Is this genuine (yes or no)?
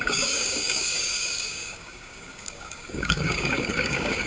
no